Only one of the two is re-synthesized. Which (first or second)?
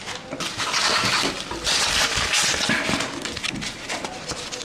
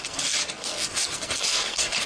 second